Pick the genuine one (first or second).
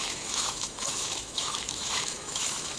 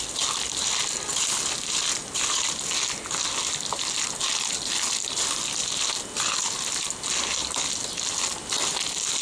second